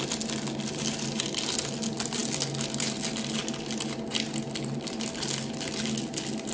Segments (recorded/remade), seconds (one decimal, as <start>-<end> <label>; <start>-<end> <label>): 0.0-6.5 recorded